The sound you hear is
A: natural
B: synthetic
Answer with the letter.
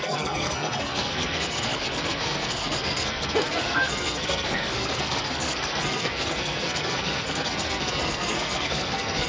B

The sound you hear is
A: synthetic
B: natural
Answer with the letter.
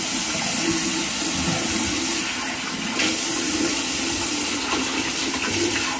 B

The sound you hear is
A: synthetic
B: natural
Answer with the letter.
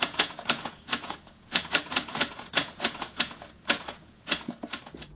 A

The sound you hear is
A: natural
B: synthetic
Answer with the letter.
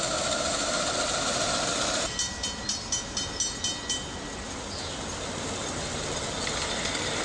A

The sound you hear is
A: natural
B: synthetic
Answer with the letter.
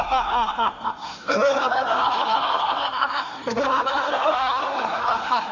B